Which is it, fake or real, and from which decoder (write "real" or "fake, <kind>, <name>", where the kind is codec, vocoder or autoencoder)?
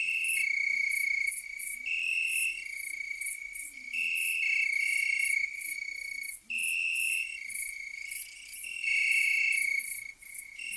real